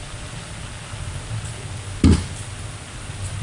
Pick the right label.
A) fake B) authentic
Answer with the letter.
B